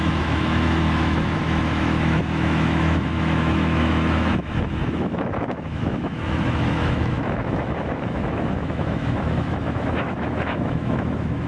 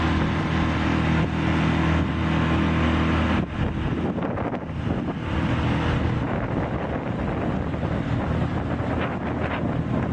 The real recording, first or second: second